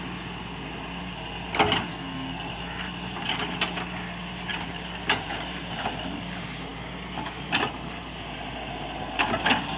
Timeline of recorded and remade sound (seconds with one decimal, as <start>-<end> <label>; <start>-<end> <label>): 0.0-1.9 recorded; 1.9-2.5 remade; 2.5-9.8 recorded